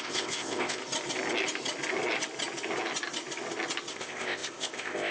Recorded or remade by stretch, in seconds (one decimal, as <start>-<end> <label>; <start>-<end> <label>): 0.0-0.8 remade; 0.8-3.9 recorded; 3.9-5.1 remade